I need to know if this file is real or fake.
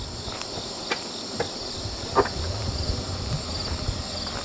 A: real